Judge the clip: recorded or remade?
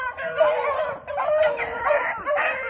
recorded